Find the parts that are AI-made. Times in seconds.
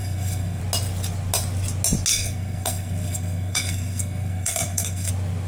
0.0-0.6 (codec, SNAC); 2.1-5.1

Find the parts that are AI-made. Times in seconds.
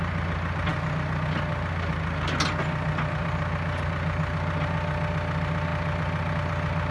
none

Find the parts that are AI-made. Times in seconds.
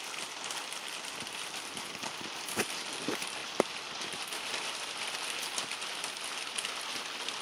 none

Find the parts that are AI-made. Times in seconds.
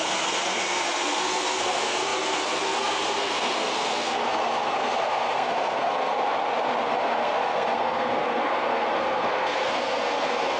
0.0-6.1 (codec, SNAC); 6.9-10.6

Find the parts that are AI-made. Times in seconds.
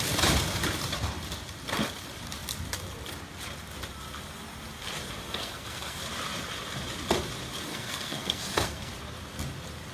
5.2-6.0 (codec, SNAC); 7.7-8.9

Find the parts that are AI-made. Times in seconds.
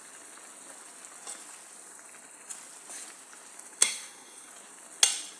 3.8-4.5 (codec, SNAC)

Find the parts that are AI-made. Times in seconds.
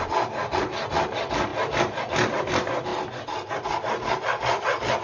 none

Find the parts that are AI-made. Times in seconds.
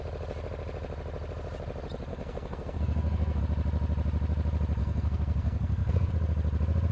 2.1-3.4 (codec, SNAC); 4.8-6.1